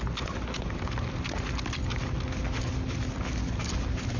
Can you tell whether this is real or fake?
real